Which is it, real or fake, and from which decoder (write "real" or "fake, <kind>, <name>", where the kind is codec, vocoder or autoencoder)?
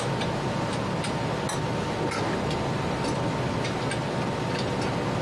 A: real